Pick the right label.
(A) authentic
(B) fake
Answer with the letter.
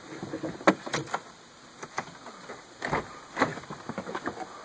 A